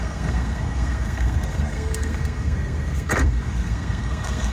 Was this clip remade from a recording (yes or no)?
yes